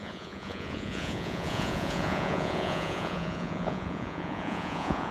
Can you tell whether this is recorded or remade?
remade